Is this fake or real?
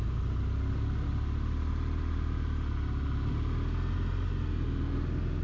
real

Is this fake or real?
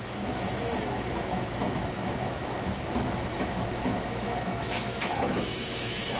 fake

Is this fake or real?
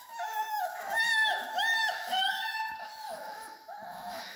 fake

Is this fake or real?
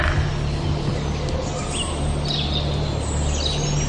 real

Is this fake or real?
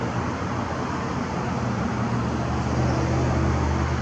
real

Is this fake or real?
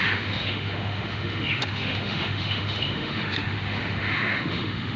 fake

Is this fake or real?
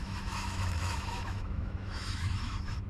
fake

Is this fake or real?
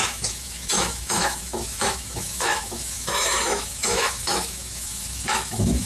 fake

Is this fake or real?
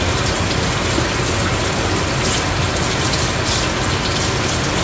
real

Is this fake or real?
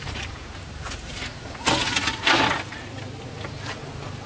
real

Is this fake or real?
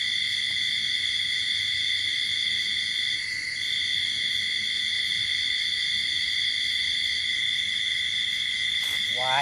real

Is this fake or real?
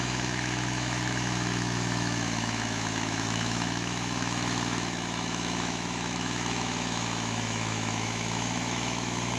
fake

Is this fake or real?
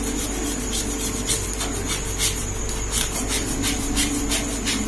real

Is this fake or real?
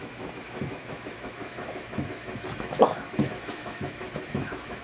fake